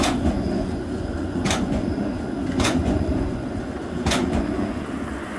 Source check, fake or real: fake